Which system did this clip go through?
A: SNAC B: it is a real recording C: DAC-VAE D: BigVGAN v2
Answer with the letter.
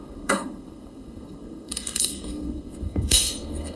A